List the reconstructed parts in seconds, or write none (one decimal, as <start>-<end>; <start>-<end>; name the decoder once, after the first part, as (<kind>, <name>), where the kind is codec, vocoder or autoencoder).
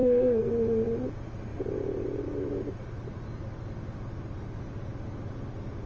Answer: 0.0-0.5 (codec, SNAC)